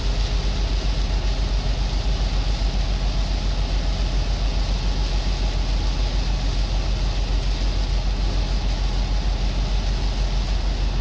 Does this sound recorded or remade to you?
recorded